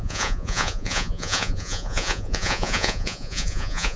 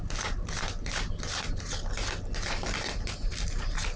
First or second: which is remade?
first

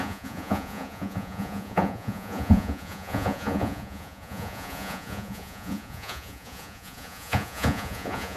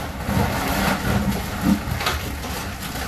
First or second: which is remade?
first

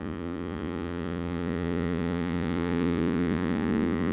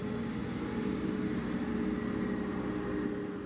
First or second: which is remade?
first